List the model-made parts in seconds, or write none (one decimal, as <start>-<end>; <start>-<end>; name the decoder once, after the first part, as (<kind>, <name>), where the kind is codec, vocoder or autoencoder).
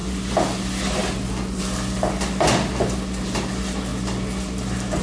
none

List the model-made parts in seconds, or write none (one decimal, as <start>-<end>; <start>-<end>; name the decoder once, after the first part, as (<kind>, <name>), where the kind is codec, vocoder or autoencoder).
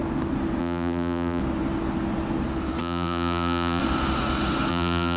0.6-1.4 (vocoder, BigVGAN v2); 2.8-3.8; 4.7-5.2